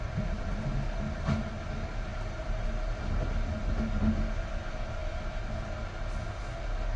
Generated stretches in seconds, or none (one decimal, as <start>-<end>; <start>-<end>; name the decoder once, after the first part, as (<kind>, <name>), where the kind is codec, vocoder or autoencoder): none